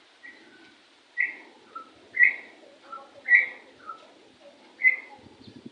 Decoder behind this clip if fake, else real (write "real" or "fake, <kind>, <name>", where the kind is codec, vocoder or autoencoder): real